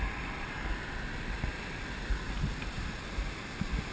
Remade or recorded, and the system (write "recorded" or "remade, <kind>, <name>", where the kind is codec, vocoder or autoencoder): recorded